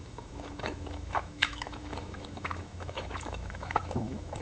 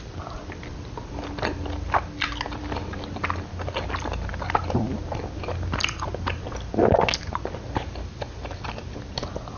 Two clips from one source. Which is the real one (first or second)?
second